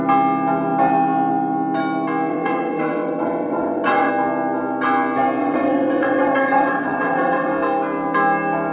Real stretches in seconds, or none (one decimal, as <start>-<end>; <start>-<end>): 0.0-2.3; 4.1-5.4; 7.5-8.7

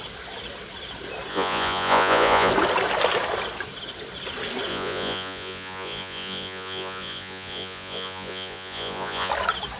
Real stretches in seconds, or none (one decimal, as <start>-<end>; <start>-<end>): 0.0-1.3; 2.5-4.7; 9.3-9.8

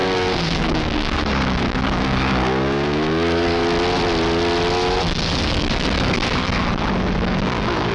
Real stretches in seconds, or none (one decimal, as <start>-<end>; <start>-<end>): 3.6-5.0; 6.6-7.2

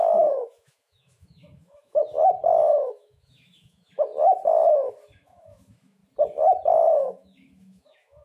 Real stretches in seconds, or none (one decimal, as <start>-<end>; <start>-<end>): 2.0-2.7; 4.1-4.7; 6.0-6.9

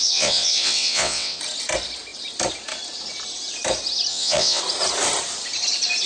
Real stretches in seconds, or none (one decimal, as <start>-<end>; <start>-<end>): 1.4-4.1; 4.6-6.1

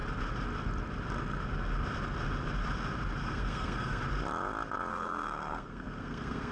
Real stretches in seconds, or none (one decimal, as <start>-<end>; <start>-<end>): 0.0-3.2; 4.0-4.9